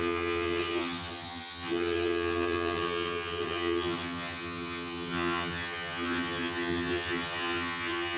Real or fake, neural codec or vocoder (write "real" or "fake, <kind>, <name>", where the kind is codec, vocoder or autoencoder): fake, vocoder, HiFi-GAN